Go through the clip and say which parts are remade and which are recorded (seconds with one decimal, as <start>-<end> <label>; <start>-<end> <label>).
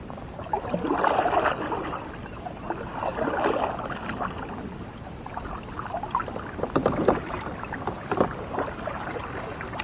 0.0-9.8 recorded